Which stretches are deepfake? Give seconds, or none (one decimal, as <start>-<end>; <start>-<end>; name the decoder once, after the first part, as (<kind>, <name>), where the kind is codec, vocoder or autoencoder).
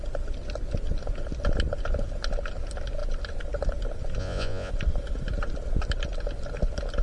4.2-4.7 (vocoder, Vocos)